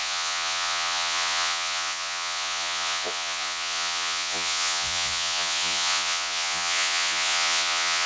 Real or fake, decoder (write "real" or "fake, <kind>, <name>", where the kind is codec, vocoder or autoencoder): fake, vocoder, Vocos